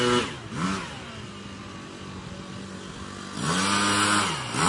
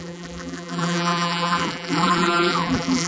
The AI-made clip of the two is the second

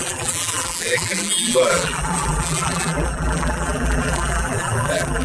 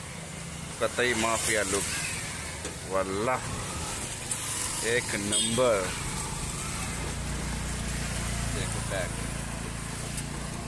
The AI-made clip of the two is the first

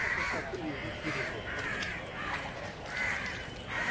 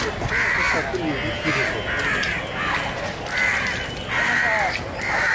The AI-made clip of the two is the first